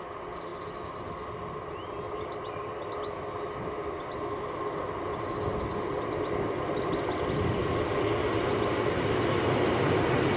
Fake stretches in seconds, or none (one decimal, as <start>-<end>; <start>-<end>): none